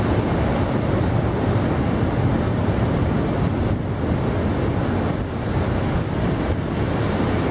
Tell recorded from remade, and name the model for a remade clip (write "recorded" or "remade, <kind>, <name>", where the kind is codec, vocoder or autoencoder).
recorded